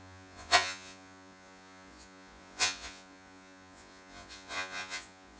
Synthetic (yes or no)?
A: yes